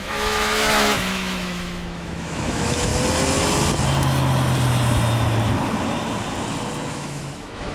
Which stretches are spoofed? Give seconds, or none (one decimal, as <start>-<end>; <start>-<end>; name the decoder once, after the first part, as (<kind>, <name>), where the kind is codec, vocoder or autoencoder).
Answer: 0.0-2.9 (autoencoder, DAC-VAE); 6.9-7.7